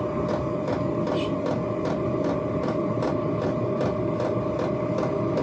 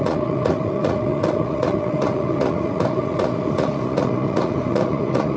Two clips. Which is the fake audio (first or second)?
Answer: second